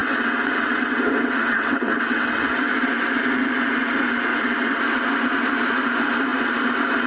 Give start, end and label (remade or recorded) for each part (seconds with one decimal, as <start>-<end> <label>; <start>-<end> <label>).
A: 0.0-2.7 remade; 2.7-4.3 recorded; 4.3-4.8 remade; 4.8-7.1 recorded